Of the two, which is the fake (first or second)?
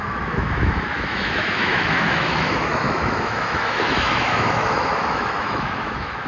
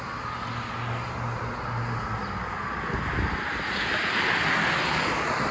first